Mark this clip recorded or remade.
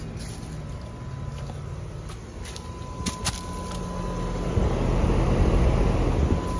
recorded